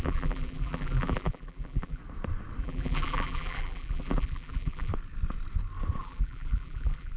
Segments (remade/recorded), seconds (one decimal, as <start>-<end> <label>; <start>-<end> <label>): 0.0-2.0 remade; 2.0-2.6 recorded; 2.6-4.9 remade; 4.9-6.0 recorded; 6.0-7.2 remade